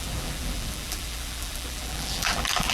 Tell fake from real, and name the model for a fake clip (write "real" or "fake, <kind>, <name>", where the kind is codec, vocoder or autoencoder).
fake, vocoder, BigVGAN v2